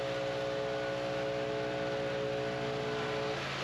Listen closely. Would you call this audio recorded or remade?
recorded